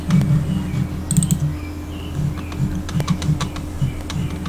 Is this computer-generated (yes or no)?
no